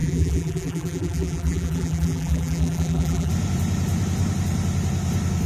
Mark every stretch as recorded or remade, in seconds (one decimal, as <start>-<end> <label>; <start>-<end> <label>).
0.0-3.3 remade; 3.3-5.5 recorded